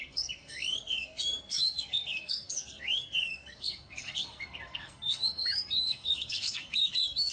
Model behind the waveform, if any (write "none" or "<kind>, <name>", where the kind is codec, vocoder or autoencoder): codec, SNAC